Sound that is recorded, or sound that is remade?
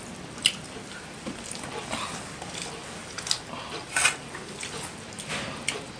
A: recorded